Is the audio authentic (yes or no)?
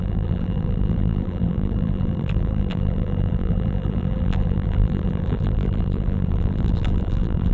no